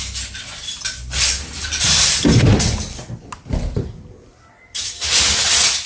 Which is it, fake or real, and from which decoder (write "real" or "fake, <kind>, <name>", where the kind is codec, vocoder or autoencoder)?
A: real